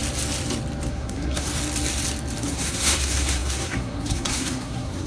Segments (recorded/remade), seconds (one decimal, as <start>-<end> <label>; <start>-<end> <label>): 0.0-0.9 recorded; 0.9-1.5 remade; 1.5-2.4 recorded; 2.4-5.1 remade